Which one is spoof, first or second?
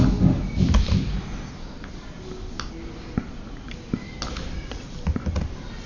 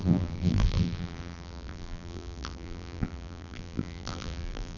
second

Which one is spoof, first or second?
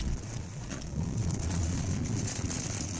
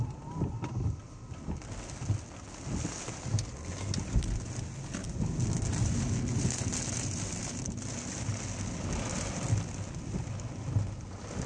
first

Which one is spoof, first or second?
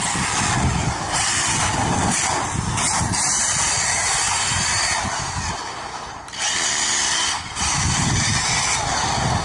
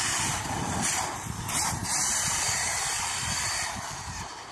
second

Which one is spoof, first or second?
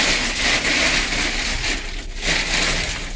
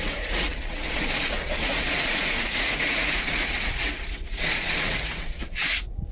second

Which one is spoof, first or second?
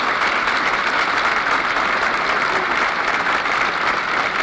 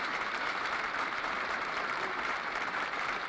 second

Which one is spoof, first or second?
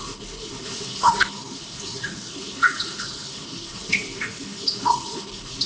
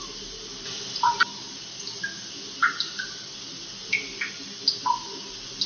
first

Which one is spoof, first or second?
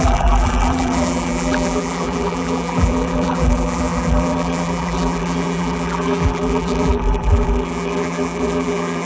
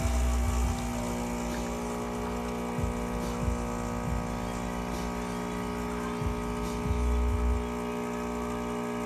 first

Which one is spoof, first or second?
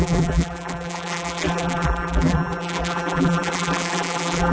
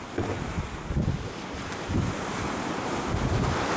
first